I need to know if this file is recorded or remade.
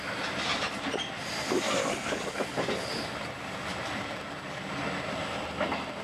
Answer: recorded